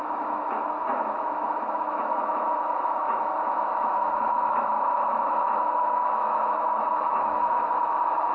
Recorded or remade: remade